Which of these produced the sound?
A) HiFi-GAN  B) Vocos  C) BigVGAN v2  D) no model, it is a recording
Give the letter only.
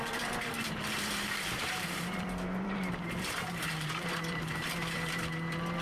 C